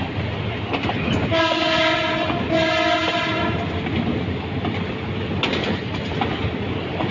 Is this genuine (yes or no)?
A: yes